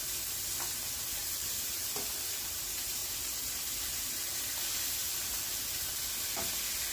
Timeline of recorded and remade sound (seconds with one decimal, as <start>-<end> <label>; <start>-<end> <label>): 0.0-1.2 recorded; 1.2-2.6 remade; 2.6-6.9 recorded